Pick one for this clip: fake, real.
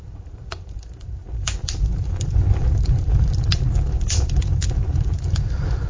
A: fake